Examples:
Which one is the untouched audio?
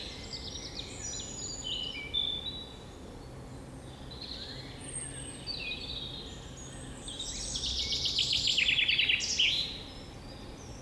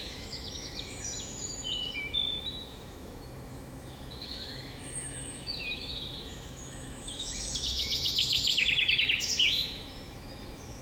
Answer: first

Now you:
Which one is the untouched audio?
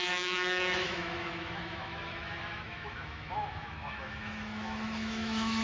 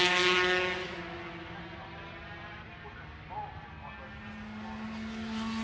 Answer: second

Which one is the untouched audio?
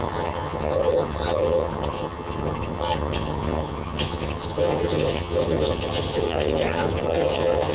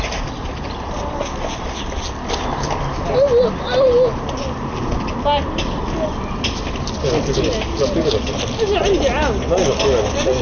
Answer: second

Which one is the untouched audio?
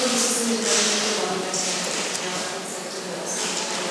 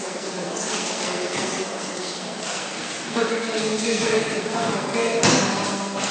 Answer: first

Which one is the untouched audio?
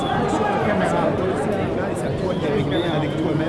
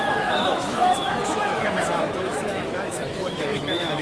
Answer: first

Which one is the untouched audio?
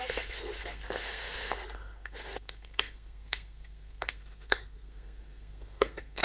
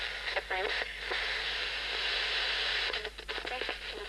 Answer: second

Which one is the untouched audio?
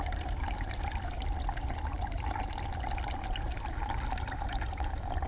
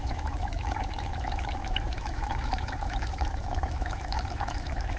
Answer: first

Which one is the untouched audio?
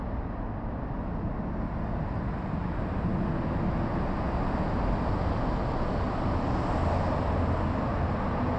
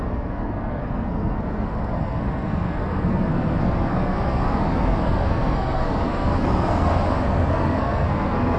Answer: first